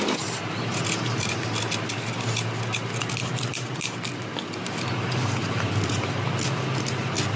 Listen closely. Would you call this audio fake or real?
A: real